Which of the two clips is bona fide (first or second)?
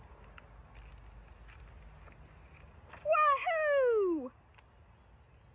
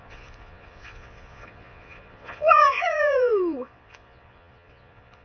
first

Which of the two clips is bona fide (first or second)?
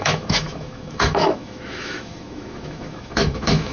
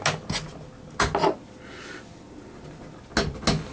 second